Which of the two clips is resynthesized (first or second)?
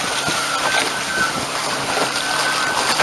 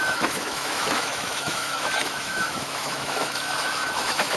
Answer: second